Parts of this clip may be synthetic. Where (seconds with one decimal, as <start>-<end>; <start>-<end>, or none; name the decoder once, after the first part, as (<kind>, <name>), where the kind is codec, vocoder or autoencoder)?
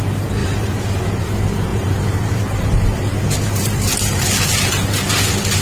0.4-1.0 (vocoder, BigVGAN v2); 1.7-5.1